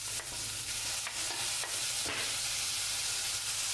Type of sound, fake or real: real